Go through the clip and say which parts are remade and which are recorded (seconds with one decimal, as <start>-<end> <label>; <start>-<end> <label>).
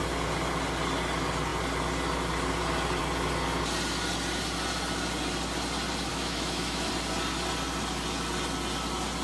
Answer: 0.0-6.1 recorded; 6.1-6.9 remade; 6.9-9.2 recorded